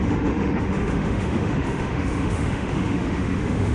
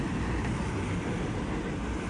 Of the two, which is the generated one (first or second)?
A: first